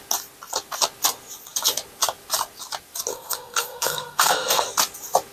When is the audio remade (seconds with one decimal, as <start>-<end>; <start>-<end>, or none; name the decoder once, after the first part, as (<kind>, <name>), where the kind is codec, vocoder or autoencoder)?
3.1-4.6 (codec, SNAC)